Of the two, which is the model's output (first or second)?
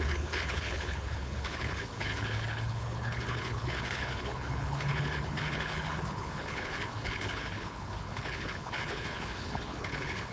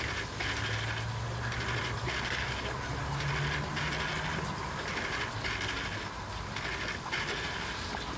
first